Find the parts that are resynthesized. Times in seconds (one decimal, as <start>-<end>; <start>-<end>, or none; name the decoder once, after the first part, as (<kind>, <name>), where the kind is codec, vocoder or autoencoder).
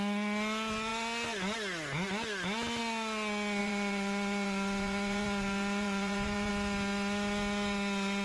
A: 3.6-6.5 (vocoder, Vocos)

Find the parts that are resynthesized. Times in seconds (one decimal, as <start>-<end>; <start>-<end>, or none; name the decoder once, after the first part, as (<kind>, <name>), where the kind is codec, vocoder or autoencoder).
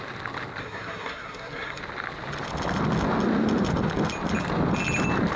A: 0.6-1.8 (codec, SNAC)